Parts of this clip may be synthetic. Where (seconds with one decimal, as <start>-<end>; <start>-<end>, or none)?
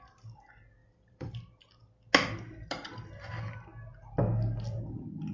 0.8-1.4